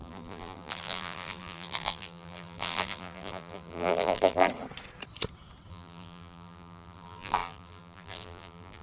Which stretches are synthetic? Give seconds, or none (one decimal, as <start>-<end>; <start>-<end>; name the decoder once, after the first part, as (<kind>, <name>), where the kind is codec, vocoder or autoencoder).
0.0-4.5 (vocoder, BigVGAN v2); 5.7-8.8